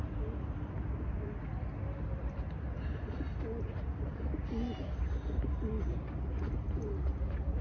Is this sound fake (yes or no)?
no